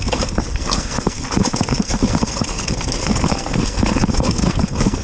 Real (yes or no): no